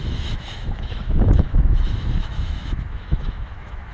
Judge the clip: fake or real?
fake